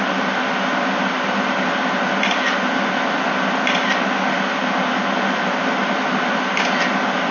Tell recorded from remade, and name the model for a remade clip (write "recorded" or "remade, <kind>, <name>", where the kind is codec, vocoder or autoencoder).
recorded